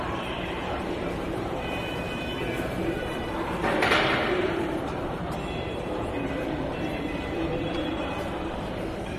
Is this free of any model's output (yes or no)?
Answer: no